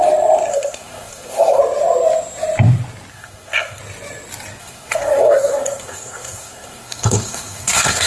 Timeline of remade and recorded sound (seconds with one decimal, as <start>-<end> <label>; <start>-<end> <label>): 0.0-0.5 recorded; 0.5-1.6 remade; 1.6-3.1 recorded; 3.1-3.8 remade; 3.8-4.6 recorded; 4.6-8.1 remade